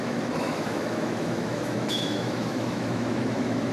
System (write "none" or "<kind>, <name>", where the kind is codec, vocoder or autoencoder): autoencoder, DAC-VAE